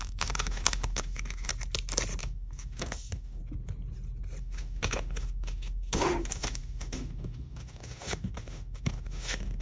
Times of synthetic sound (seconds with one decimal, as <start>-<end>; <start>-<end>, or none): 0.0-1.5; 2.2-3.4; 4.4-9.6